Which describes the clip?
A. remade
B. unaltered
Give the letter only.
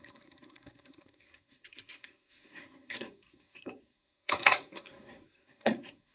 A